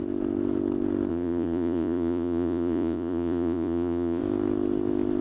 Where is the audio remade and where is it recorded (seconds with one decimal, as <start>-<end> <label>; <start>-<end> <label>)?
0.0-1.1 recorded; 1.1-4.2 remade; 4.2-5.2 recorded